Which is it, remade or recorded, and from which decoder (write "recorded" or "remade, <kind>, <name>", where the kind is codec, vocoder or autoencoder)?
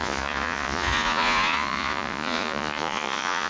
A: remade, vocoder, Vocos